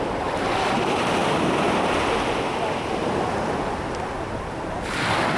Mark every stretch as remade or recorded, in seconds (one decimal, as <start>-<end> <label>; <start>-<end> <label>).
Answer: 0.0-5.4 recorded